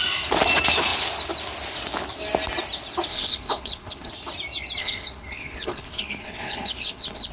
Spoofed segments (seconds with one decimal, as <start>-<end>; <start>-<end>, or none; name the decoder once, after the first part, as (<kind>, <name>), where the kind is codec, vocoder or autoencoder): 3.1-4.1 (codec, HILCodec); 4.8-7.3